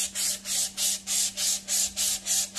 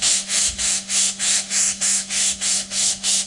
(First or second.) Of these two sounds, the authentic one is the first